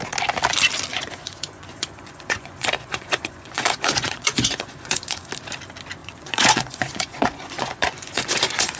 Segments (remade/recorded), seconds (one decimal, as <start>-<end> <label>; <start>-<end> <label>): 0.0-0.9 recorded; 0.9-5.3 remade; 5.3-6.0 recorded; 6.0-8.8 remade